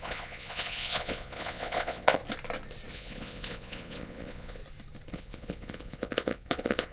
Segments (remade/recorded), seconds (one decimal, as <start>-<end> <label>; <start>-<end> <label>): 0.0-2.2 remade; 2.2-2.9 recorded; 2.9-4.6 remade; 4.6-5.1 recorded; 5.1-6.9 remade